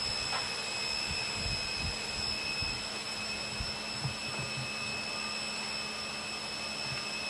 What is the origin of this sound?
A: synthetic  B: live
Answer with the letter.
B